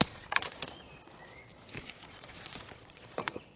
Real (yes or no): no